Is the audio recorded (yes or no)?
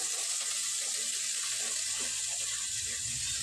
yes